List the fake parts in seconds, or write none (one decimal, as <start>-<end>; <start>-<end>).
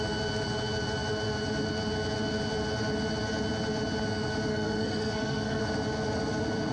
4.5-5.6